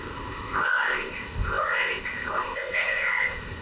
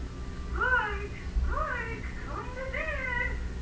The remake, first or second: first